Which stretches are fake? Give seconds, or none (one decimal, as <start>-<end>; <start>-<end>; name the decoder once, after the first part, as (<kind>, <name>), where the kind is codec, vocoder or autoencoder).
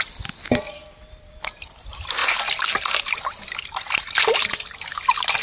none